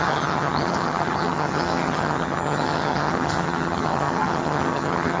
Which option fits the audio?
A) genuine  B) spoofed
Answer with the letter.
B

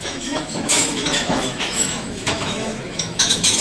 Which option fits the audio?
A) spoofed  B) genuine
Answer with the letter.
A